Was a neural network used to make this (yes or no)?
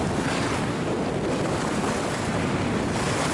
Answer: no